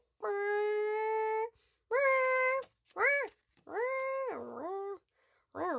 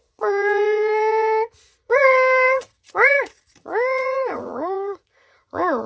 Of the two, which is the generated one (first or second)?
second